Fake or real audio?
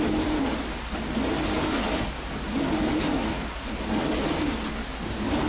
real